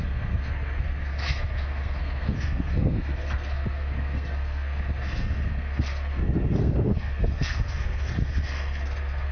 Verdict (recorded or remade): remade